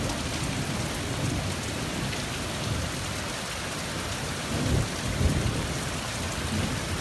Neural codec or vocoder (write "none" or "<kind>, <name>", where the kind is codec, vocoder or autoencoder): none